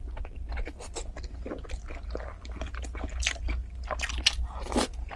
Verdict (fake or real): real